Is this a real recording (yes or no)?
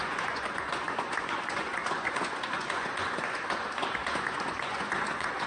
no